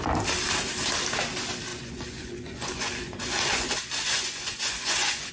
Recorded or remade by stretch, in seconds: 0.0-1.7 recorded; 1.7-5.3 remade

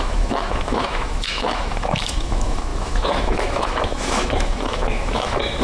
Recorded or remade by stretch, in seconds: 0.0-5.6 remade

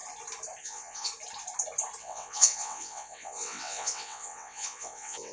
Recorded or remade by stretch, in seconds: 0.0-0.6 recorded; 0.6-1.1 remade; 1.1-2.0 recorded; 2.0-5.3 remade

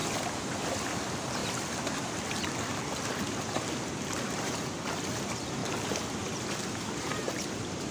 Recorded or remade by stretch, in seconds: 0.0-0.6 recorded; 0.6-1.4 remade; 1.4-4.9 recorded; 4.9-5.6 remade; 5.6-6.2 recorded; 6.2-7.9 remade

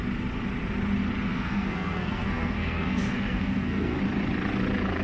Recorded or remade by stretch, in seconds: 0.0-1.3 recorded; 1.3-4.0 remade; 4.0-5.0 recorded

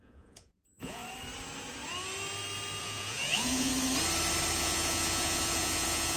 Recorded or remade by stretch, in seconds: 0.0-1.0 remade; 1.0-2.8 recorded; 2.8-3.7 remade; 3.7-4.6 recorded; 4.6-6.2 remade